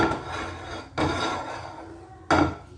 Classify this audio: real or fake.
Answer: real